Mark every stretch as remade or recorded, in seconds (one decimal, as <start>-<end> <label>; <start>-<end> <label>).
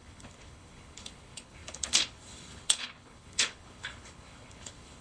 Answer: 0.0-5.0 remade